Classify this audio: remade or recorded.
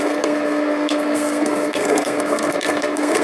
remade